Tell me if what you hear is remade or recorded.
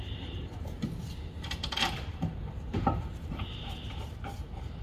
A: remade